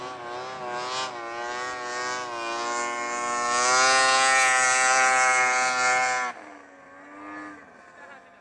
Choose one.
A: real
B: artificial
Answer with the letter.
A